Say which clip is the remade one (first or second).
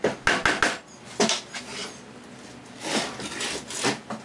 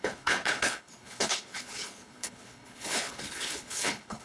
second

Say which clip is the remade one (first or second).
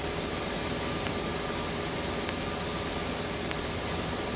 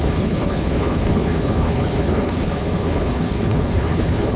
second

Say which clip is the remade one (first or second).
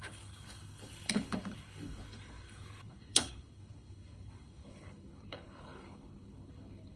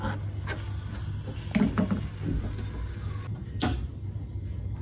first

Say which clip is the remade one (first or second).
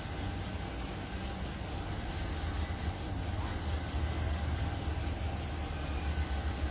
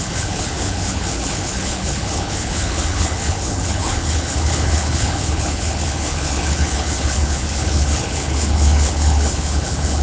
second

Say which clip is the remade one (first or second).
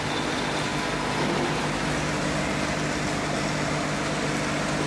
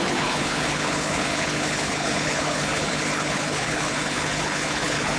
second